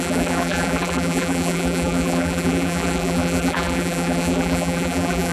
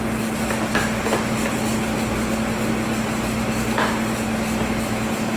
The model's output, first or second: first